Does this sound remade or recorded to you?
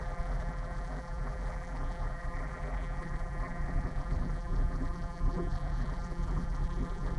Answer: remade